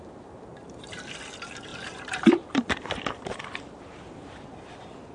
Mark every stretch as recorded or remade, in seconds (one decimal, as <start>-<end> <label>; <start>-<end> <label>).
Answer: 0.0-0.5 recorded; 0.5-1.1 remade; 1.1-1.7 recorded; 1.7-4.6 remade; 4.6-5.1 recorded